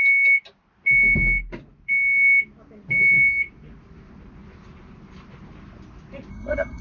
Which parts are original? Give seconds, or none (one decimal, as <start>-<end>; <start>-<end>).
0.0-6.3